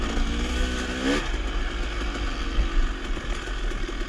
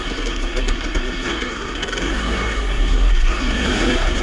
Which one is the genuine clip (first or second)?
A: first